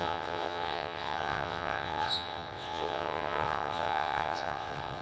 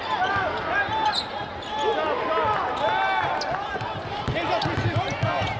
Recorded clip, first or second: second